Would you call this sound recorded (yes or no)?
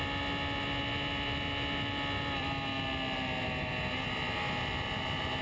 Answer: yes